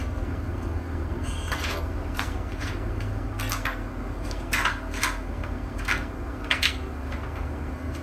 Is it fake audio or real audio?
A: fake